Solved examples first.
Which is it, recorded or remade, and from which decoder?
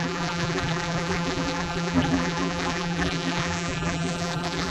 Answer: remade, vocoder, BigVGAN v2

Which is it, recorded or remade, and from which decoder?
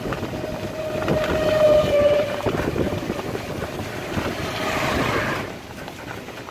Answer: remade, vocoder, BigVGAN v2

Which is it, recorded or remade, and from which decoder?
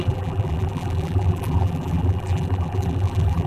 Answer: remade, vocoder, BigVGAN v2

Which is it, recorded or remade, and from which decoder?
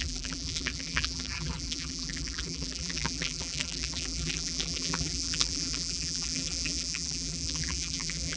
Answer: remade, vocoder, BigVGAN v2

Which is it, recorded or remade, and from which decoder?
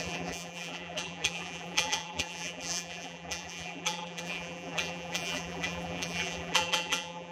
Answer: remade, vocoder, BigVGAN v2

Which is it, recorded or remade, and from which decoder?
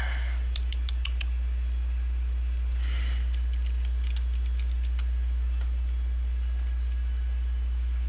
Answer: remade, vocoder, BigVGAN v2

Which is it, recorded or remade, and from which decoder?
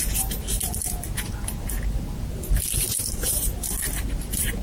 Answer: recorded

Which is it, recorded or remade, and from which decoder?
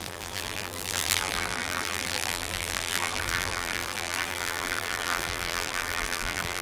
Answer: remade, vocoder, BigVGAN v2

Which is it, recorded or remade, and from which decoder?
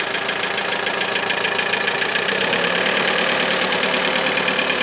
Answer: remade, vocoder, BigVGAN v2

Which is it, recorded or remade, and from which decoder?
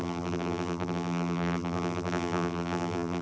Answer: remade, vocoder, BigVGAN v2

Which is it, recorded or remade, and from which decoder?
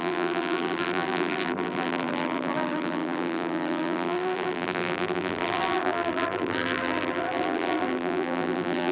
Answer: remade, vocoder, BigVGAN v2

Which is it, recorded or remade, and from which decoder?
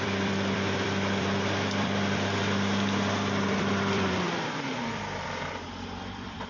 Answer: remade, vocoder, BigVGAN v2